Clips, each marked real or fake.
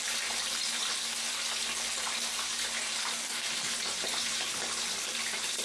real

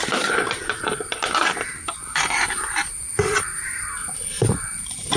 fake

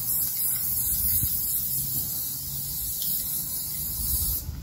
real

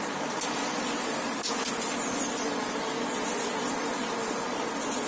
real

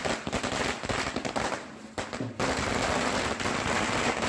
real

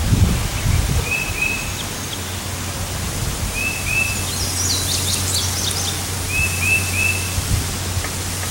real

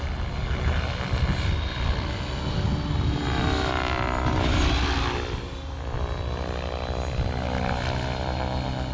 real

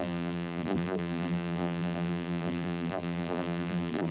fake